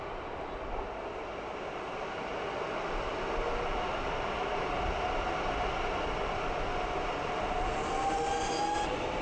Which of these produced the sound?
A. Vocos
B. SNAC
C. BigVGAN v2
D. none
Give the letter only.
D